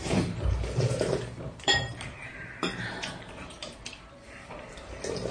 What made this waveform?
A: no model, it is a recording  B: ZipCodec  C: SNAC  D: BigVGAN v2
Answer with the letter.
D